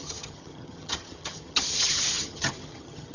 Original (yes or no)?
no